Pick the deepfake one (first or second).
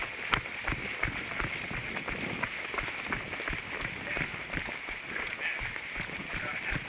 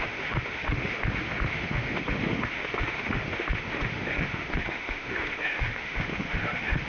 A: second